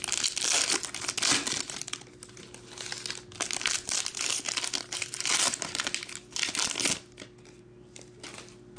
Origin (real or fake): real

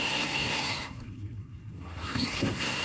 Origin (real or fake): fake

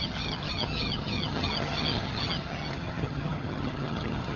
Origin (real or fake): fake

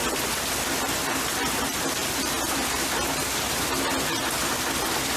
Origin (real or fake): real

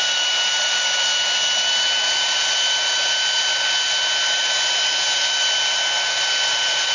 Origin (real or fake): real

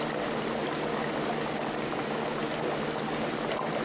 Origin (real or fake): real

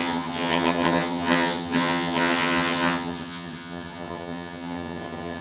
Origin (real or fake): fake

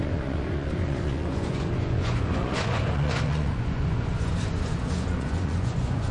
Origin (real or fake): fake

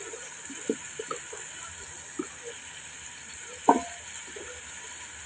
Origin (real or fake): real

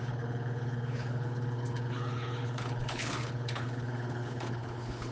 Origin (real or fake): fake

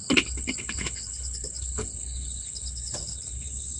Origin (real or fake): fake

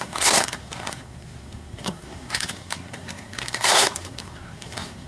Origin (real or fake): fake